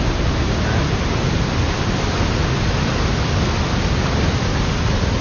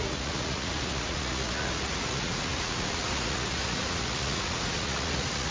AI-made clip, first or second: second